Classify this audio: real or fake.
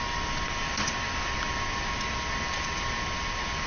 real